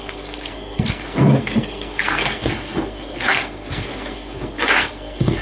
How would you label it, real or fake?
fake